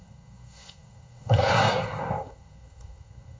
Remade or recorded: remade